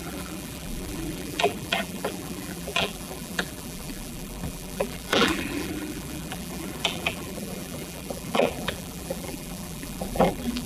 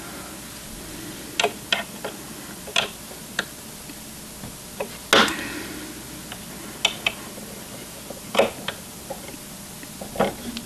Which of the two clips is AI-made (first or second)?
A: first